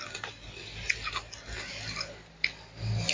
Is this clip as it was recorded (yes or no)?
yes